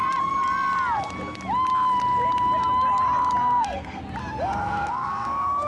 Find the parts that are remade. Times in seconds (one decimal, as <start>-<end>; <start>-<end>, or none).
3.4-4.0; 4.6-5.7